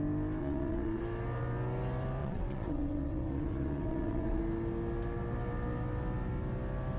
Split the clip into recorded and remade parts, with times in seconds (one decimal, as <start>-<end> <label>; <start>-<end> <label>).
0.0-0.4 recorded; 0.4-1.0 remade; 1.0-2.2 recorded; 2.2-4.4 remade; 4.4-7.0 recorded